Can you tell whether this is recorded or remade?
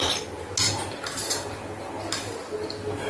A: recorded